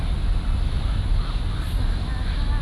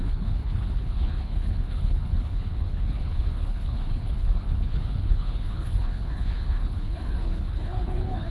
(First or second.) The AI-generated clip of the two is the second